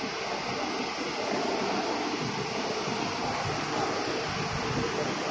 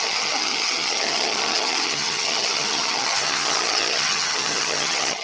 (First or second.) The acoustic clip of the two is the first